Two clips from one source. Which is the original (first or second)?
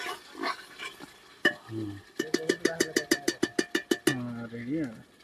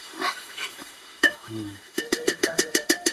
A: first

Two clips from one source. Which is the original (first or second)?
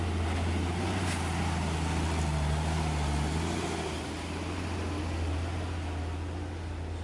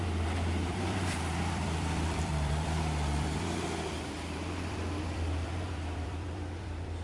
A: first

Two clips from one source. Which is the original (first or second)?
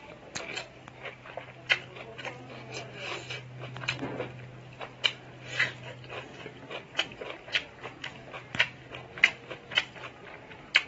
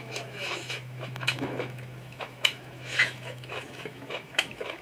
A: first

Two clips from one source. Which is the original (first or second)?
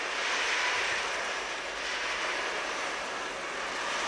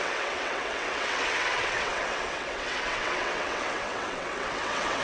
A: first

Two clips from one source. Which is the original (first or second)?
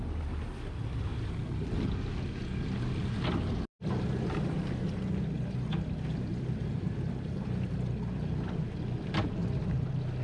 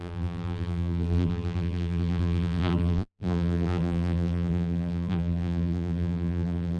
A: first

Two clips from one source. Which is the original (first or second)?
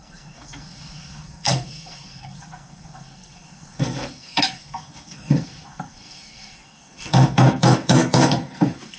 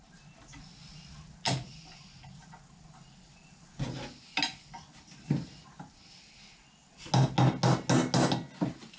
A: second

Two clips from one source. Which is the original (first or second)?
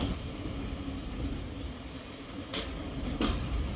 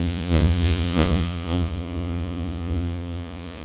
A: first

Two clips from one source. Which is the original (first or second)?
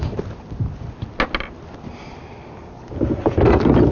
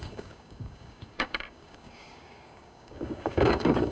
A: first